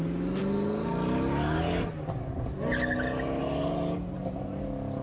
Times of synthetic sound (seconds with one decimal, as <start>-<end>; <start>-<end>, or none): none